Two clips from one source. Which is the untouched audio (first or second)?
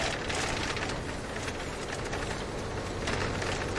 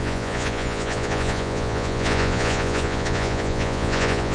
first